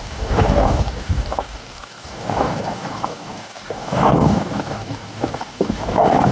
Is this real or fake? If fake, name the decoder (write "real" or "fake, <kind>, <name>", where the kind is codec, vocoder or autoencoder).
fake, codec, DAC